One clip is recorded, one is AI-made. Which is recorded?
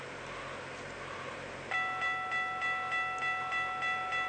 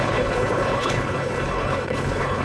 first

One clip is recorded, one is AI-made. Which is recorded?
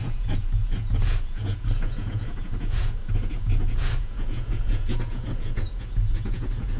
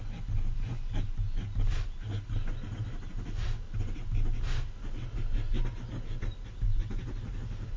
second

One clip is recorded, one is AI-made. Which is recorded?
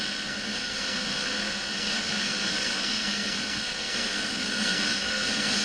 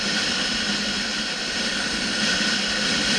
second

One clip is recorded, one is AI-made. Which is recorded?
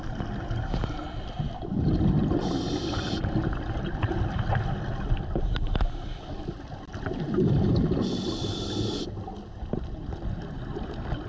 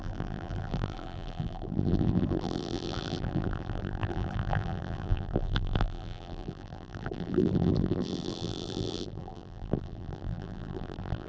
first